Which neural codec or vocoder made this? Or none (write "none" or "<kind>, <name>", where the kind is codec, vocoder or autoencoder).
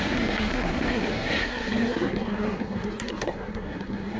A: codec, SNAC